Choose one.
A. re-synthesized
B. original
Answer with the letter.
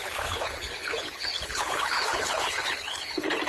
A